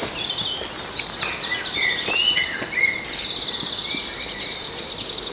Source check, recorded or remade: recorded